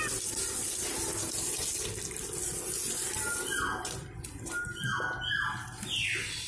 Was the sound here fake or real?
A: real